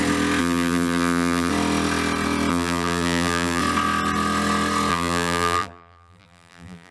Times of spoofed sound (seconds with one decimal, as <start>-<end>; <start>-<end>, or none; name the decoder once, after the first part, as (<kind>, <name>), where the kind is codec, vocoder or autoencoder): 0.4-1.5 (vocoder, BigVGAN v2); 2.5-3.6; 4.9-6.9